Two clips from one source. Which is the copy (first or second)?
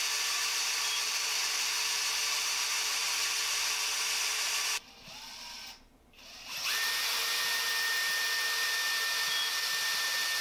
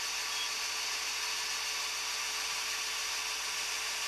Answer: first